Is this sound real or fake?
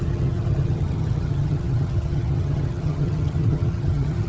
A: fake